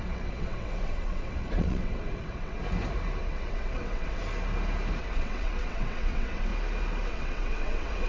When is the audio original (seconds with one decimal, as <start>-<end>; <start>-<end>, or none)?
2.6-3.2; 4.2-5.0; 6.5-7.1